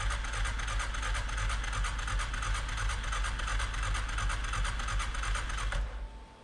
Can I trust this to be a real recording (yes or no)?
yes